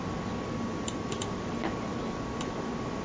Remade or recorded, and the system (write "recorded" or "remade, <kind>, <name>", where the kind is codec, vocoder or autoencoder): recorded